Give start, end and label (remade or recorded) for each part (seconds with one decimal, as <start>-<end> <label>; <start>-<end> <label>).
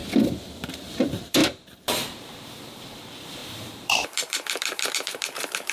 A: 0.0-0.7 recorded; 0.7-5.7 remade